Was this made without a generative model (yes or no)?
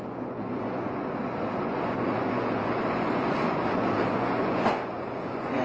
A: no